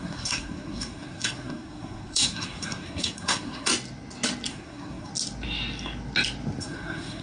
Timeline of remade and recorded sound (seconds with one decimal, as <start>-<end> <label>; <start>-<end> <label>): 0.0-3.7 remade; 3.7-4.5 recorded; 4.5-5.1 remade; 5.1-6.6 recorded; 6.6-7.2 remade